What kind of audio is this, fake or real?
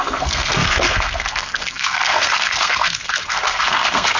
fake